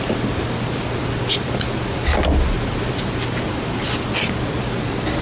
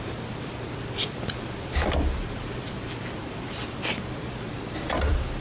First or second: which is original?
first